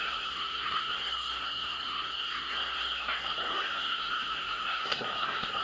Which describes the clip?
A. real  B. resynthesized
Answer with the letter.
B